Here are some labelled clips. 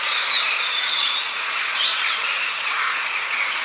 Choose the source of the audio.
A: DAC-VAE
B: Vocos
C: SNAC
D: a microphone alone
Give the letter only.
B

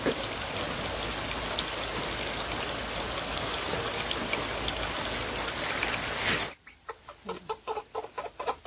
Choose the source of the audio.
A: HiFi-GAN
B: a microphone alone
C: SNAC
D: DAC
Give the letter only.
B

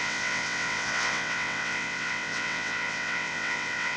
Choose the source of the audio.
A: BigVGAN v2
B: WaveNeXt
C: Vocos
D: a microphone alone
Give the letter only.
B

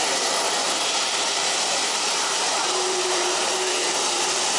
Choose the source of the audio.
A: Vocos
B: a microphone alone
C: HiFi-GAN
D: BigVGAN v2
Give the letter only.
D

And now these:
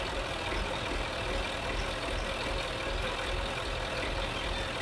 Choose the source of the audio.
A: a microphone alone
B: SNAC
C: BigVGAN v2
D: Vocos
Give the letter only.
A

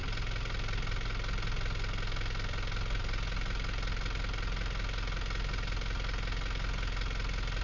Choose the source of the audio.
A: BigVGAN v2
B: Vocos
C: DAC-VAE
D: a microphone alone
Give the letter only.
D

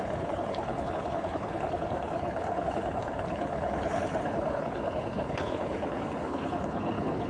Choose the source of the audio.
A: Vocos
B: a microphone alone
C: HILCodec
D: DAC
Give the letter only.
C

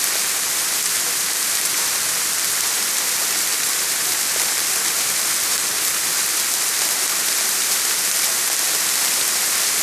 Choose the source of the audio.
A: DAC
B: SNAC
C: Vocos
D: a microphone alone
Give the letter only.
D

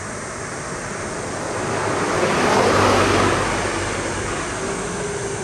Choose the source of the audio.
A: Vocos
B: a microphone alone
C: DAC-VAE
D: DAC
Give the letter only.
B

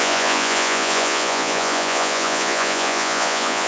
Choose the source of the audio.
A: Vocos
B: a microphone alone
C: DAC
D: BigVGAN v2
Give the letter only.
A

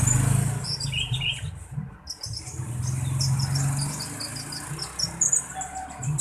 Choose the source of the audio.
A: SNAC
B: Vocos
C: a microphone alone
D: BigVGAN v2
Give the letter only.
C